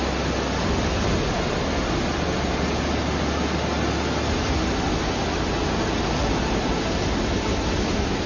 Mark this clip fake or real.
real